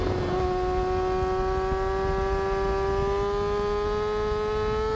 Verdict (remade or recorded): recorded